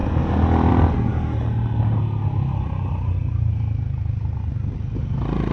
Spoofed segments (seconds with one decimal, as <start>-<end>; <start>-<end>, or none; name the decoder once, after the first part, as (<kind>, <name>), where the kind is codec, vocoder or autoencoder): none